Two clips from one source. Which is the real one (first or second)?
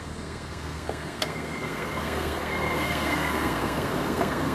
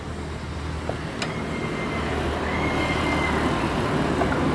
second